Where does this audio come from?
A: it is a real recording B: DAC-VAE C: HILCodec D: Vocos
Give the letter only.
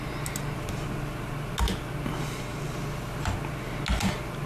A